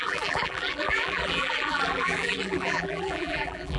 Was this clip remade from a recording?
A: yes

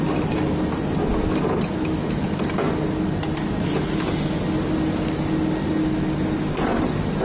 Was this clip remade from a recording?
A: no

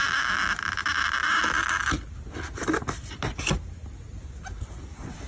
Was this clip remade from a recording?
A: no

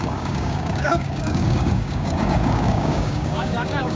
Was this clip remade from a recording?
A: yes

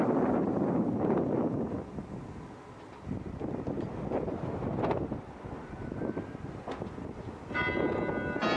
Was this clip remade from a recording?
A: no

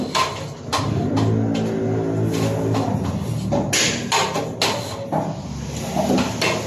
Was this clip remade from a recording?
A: no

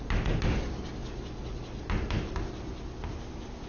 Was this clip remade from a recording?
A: no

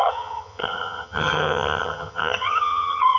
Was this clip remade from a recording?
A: yes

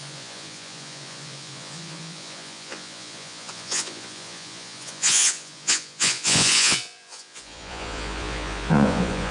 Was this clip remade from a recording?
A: yes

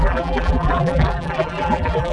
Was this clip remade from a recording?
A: yes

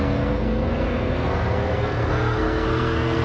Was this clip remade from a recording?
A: yes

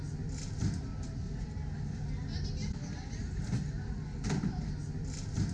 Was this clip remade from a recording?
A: no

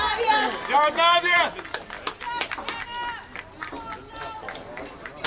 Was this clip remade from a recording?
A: no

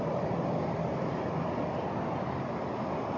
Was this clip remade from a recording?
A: no